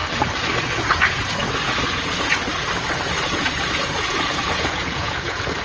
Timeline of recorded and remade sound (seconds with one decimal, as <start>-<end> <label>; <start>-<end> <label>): 0.0-0.7 recorded; 0.7-1.4 remade; 1.4-1.9 recorded; 1.9-2.5 remade; 2.5-3.2 recorded; 3.2-5.6 remade